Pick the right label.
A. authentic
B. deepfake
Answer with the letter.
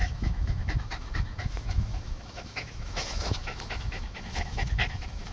B